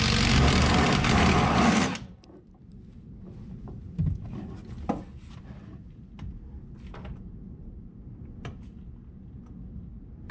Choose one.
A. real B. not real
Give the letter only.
A